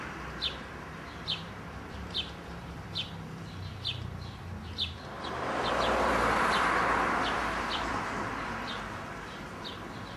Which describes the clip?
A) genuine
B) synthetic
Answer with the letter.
B